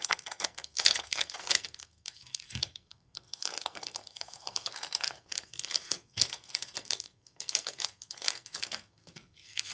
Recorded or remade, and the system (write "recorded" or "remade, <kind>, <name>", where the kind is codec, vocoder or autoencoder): remade, codec, SNAC